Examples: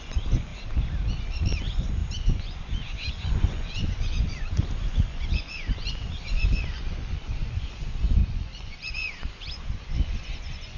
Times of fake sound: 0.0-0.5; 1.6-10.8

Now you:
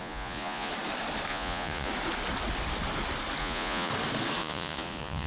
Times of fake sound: 0.0-0.7; 1.3-1.9; 3.4-3.9; 4.4-5.3

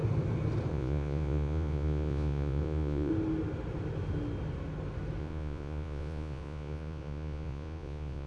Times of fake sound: 0.7-3.1; 5.2-8.3

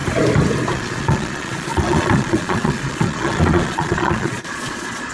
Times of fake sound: 0.7-5.1

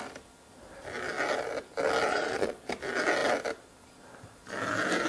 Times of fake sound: 2.1-2.7

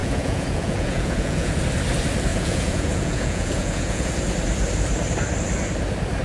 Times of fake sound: 0.0-1.6; 2.3-4.1